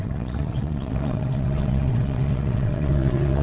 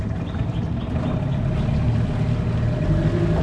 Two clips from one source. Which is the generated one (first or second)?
first